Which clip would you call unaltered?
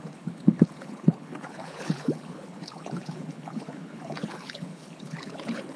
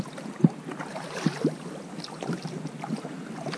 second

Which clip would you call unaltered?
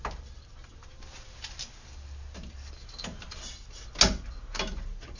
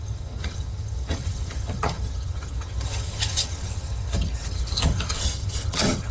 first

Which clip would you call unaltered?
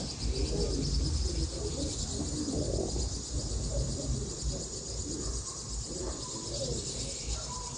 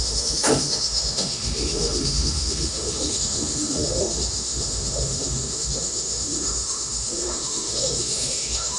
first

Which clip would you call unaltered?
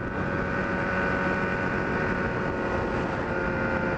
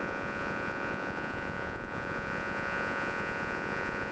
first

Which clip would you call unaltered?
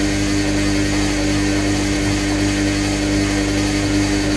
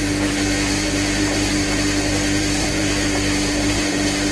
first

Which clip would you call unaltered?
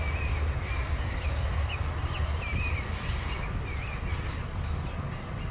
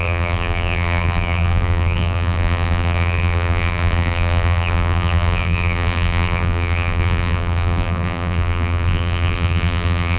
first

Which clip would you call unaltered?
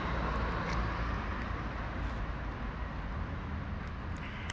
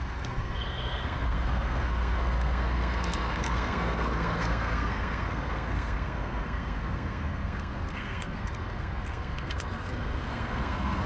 first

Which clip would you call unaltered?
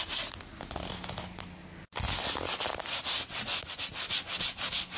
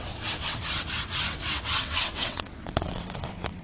first